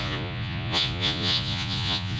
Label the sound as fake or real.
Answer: fake